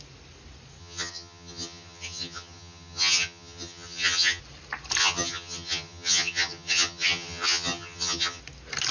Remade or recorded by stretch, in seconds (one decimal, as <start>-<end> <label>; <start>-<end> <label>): 0.0-0.8 recorded; 0.8-4.4 remade; 4.4-5.0 recorded; 5.0-8.4 remade; 8.4-8.9 recorded